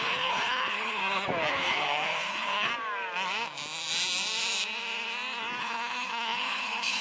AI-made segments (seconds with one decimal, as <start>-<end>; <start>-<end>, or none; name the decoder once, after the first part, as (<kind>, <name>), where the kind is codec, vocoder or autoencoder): 0.0-1.0 (codec, HILCodec); 1.5-2.7; 5.6-7.0